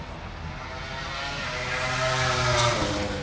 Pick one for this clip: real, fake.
real